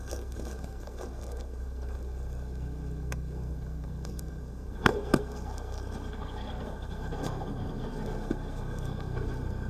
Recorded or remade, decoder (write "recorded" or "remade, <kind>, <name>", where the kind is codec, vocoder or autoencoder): remade, codec, SNAC